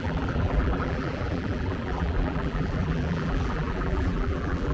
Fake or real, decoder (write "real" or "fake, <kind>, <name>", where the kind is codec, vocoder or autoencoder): fake, vocoder, BigVGAN v2